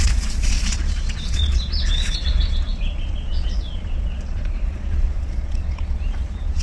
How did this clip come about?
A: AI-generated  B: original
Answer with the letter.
A